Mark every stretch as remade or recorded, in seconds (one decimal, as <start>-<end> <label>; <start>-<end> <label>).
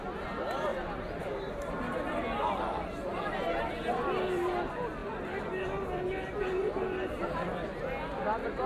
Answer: 0.0-8.7 recorded